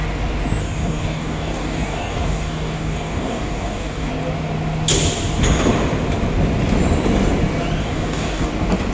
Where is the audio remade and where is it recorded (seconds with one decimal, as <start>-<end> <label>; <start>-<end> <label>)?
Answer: 0.0-0.6 recorded; 0.6-4.1 remade; 4.1-7.8 recorded; 7.8-8.5 remade; 8.5-8.9 recorded